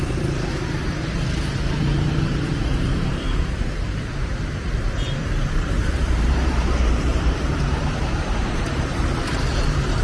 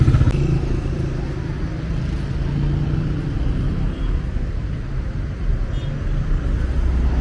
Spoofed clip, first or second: first